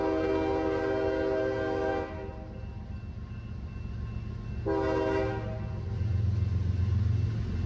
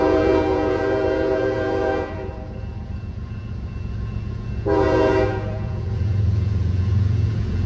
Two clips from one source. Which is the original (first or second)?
first